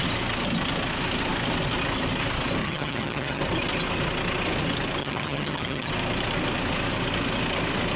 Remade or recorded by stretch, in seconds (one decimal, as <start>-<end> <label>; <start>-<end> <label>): 0.0-2.6 recorded; 2.6-3.4 remade; 3.4-5.0 recorded; 5.0-5.9 remade; 5.9-8.0 recorded